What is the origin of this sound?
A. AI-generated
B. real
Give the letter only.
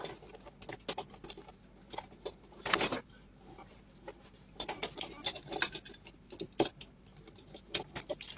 B